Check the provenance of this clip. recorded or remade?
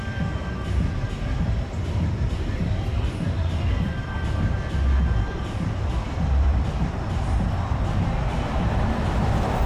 remade